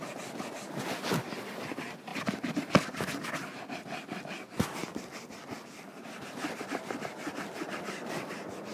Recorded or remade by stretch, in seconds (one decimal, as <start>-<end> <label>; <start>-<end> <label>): 0.0-4.8 recorded; 4.8-8.7 remade